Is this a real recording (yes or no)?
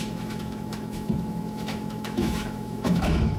no